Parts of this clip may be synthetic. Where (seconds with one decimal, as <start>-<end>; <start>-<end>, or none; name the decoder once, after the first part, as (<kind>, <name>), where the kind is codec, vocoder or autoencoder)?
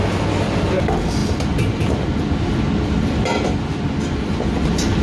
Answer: none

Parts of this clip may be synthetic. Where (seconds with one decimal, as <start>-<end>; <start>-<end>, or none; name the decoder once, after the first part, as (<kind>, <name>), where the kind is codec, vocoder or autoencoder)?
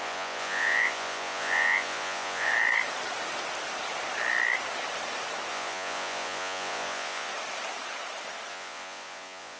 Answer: 0.0-2.5 (vocoder, Vocos); 5.5-7.3; 8.5-9.6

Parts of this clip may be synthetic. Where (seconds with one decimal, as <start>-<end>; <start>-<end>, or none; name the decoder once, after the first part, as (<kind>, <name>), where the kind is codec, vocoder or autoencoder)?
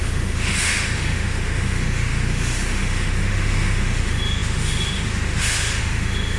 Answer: 0.0-6.4 (autoencoder, DAC-VAE)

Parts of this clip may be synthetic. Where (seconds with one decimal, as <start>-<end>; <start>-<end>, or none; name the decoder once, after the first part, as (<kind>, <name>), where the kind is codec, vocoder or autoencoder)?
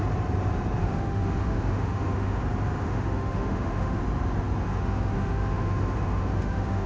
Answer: 0.8-2.4 (autoencoder, DAC-VAE); 2.8-4.0; 4.7-6.9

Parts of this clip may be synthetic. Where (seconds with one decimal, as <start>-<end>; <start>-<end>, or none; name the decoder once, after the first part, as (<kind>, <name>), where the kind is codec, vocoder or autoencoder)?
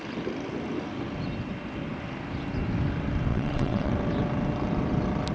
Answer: 3.3-3.9 (vocoder, WaveNeXt)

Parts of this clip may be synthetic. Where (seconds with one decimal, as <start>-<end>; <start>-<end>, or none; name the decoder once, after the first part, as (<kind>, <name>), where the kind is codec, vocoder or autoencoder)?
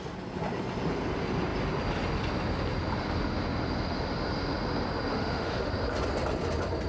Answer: 5.1-5.7 (autoencoder, DAC-VAE)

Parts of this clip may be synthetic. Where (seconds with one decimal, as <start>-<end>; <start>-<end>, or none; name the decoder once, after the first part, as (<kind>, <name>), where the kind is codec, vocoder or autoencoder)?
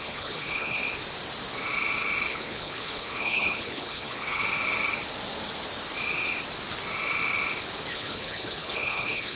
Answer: 0.0-0.8 (codec, HILCodec); 2.3-4.4; 7.9-9.4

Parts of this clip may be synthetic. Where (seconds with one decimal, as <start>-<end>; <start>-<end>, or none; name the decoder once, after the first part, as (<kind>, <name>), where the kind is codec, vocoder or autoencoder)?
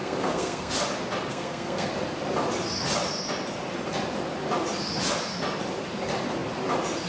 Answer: 0.0-0.7 (codec, SNAC); 1.3-1.9